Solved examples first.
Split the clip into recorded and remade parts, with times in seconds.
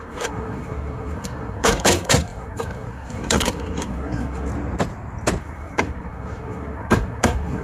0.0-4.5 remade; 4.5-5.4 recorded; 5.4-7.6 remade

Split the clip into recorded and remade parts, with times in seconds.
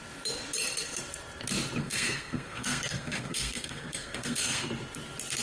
0.0-1.8 recorded; 1.8-4.7 remade; 4.7-5.4 recorded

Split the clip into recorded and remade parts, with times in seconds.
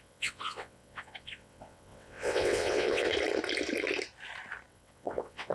0.0-3.1 remade; 3.1-4.7 recorded; 4.7-5.5 remade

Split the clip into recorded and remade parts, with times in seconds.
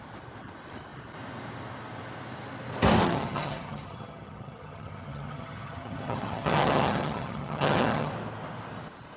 0.0-3.0 recorded; 3.0-8.1 remade; 8.1-9.2 recorded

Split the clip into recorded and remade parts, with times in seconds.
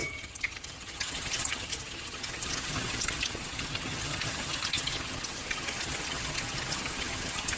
0.0-7.6 remade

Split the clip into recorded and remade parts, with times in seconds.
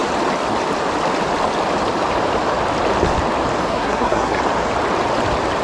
0.0-3.7 recorded; 3.7-4.4 remade; 4.4-5.6 recorded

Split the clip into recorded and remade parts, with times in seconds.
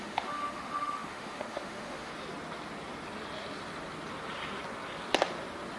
0.0-2.1 remade; 2.1-5.8 recorded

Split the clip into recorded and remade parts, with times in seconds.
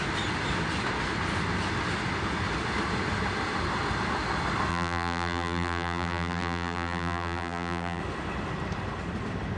0.0-4.7 recorded; 4.7-8.0 remade; 8.0-9.6 recorded